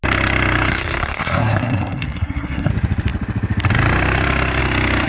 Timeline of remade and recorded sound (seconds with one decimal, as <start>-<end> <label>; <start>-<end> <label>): 0.0-0.7 recorded; 0.7-2.7 remade; 2.7-5.1 recorded